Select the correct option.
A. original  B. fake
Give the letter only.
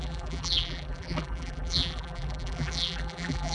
B